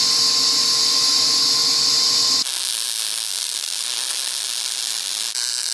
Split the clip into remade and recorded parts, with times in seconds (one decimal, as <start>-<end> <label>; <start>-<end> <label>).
0.0-5.7 recorded